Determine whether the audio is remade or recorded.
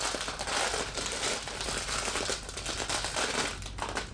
recorded